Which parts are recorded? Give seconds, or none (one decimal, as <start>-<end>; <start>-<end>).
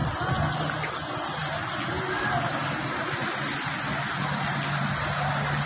0.0-5.7